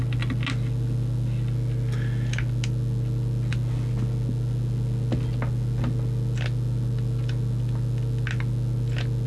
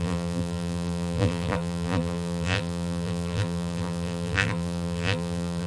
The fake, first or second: second